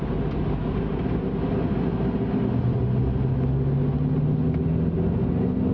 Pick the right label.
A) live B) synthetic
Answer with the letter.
A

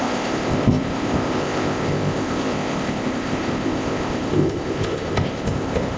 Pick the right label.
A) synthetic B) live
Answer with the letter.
A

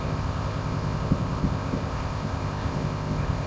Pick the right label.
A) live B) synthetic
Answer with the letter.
B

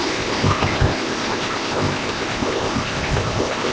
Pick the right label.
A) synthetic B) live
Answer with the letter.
A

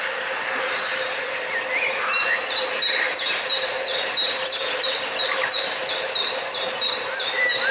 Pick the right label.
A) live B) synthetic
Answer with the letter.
A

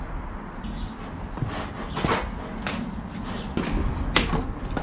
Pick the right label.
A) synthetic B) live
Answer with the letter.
B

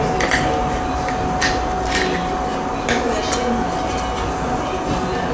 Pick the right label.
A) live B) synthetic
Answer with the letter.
A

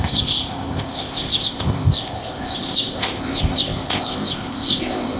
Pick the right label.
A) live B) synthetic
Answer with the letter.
B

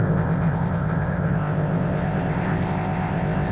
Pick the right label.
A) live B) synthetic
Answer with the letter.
B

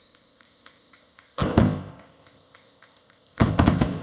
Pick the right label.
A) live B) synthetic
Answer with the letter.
B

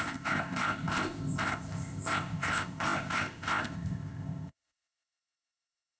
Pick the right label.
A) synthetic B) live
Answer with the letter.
A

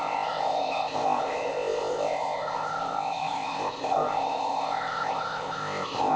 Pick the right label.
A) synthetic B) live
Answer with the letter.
A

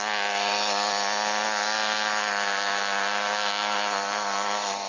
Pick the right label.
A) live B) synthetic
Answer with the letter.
A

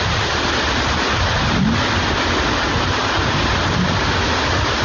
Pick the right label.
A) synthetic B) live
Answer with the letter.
B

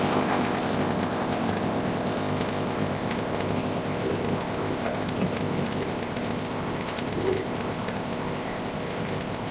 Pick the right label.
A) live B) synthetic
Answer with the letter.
B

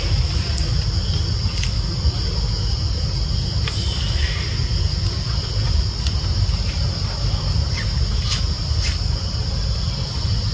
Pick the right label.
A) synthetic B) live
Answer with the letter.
B